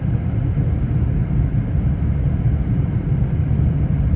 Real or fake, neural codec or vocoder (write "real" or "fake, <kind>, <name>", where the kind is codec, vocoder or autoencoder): fake, vocoder, BigVGAN v2